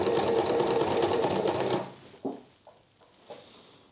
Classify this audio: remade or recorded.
recorded